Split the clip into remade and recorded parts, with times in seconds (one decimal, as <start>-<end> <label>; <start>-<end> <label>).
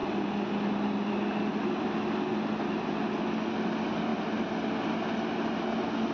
0.0-6.1 recorded